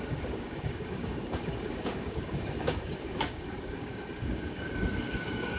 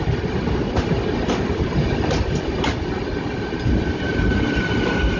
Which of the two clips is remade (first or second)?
first